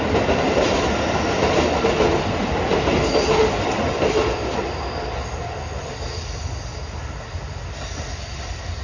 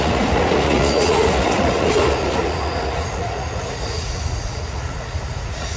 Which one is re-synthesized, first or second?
second